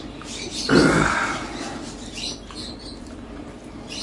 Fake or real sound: fake